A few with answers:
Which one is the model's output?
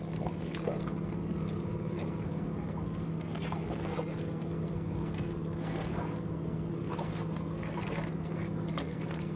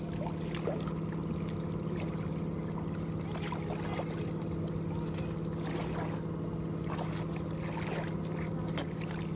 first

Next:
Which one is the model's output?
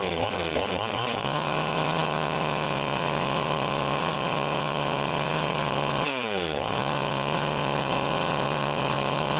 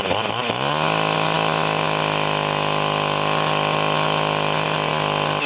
first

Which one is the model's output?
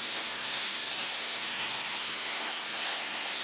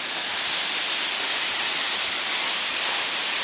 first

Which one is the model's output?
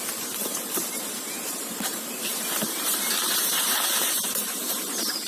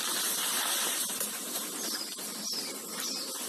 first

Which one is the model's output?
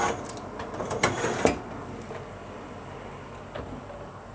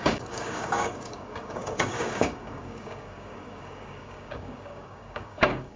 second